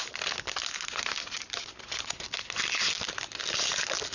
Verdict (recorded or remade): recorded